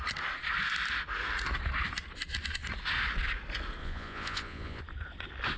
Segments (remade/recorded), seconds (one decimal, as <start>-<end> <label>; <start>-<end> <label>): 0.0-3.8 recorded; 3.8-4.8 remade; 4.8-5.6 recorded

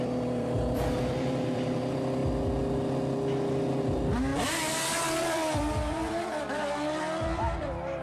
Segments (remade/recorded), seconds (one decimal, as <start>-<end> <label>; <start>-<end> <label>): 0.0-2.2 remade; 2.2-3.8 recorded; 3.8-4.3 remade; 4.3-4.9 recorded; 4.9-8.0 remade

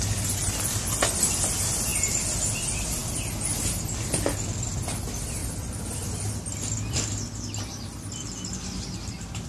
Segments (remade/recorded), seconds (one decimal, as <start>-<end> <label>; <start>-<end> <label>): 0.0-1.9 remade; 1.9-2.4 recorded; 2.4-3.0 remade; 3.0-5.0 recorded; 5.0-5.4 remade; 5.4-7.7 recorded; 7.7-9.5 remade

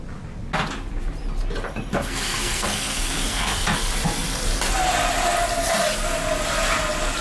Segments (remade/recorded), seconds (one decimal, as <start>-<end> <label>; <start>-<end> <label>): 0.0-1.9 recorded; 1.9-3.6 remade; 3.6-7.2 recorded

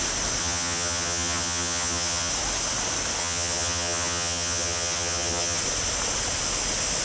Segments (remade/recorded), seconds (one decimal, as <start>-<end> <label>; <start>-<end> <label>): 0.0-0.4 recorded; 0.4-2.3 remade; 2.3-3.2 recorded; 3.2-5.6 remade; 5.6-7.0 recorded

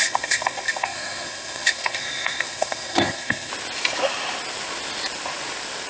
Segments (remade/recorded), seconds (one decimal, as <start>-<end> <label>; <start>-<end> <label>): 0.0-3.5 remade; 3.5-5.9 recorded

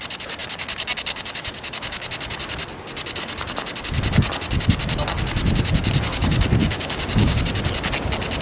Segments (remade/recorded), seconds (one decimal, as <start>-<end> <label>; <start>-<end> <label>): 0.0-6.6 recorded; 6.6-7.4 remade; 7.4-8.4 recorded

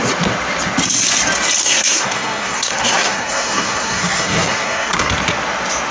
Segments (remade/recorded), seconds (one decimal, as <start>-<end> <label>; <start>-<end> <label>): 0.0-1.6 recorded; 1.6-5.1 remade; 5.1-5.9 recorded